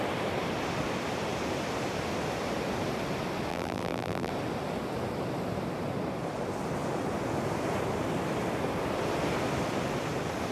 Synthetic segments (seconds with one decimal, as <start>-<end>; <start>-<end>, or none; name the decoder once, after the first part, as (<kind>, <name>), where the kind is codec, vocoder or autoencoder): 3.5-4.3 (vocoder, BigVGAN v2)